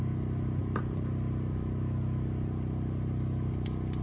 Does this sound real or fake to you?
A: real